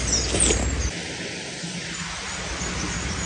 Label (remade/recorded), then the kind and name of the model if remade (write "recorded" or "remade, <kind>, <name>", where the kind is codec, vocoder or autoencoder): recorded